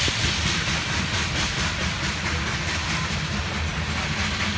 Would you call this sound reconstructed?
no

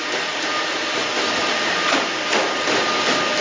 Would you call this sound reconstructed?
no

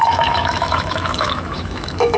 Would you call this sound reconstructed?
yes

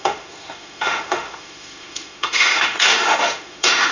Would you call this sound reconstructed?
yes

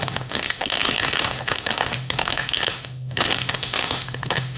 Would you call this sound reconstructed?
yes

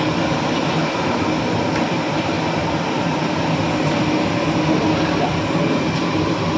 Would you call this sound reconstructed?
no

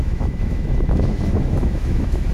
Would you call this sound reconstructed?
yes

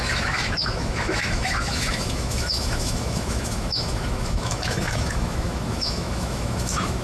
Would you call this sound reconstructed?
yes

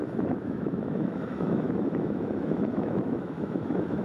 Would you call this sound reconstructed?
yes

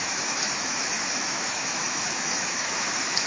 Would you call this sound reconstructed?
yes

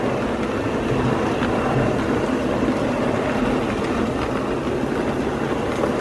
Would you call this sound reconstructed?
no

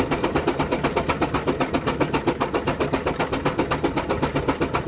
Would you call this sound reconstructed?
no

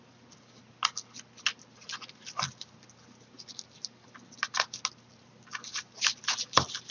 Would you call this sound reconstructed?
no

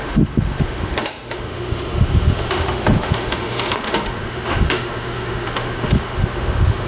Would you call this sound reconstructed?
yes